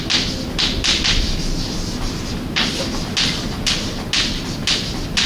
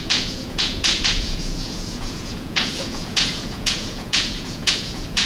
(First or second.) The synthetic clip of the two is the second